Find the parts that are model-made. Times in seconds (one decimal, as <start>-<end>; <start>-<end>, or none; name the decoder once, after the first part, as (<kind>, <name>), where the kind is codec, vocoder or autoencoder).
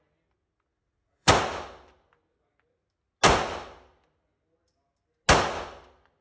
0.7-1.3 (vocoder, Vocos)